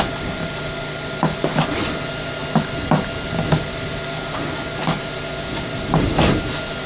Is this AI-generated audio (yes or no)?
no